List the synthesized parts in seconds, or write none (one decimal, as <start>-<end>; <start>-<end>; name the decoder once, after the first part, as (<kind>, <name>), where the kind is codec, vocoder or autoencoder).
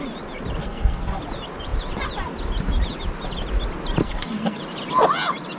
0.6-1.2 (codec, SNAC); 4.0-4.6